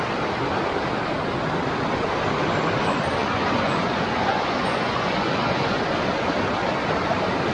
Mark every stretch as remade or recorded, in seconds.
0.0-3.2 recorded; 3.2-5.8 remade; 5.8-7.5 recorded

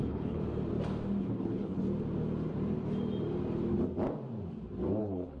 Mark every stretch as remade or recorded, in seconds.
0.0-0.4 remade; 0.4-1.2 recorded; 1.2-1.8 remade; 1.8-5.0 recorded; 5.0-5.4 remade

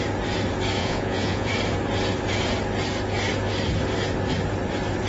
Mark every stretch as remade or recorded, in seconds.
0.0-0.8 recorded; 0.8-1.5 remade; 1.5-5.1 recorded

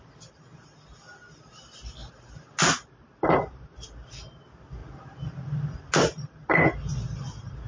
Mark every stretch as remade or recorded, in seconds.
0.0-7.7 recorded

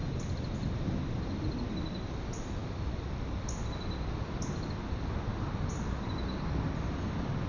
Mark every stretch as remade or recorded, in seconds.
0.0-0.7 remade; 0.7-2.6 recorded; 2.6-3.2 remade; 3.2-7.5 recorded

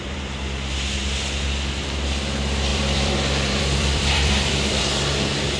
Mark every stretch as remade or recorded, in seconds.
0.0-2.7 recorded; 2.7-4.8 remade; 4.8-5.6 recorded

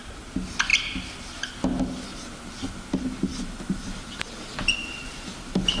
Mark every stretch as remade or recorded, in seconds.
0.0-5.8 recorded